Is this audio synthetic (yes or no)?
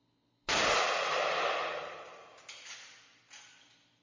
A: no